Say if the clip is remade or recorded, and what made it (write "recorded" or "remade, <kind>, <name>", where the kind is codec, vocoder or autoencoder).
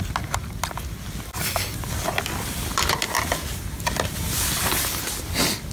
recorded